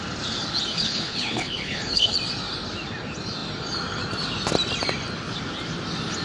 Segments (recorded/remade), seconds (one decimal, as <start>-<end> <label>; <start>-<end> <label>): 0.0-0.7 recorded; 0.7-2.1 remade; 2.1-6.2 recorded